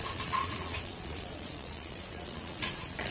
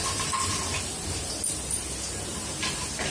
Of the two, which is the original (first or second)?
second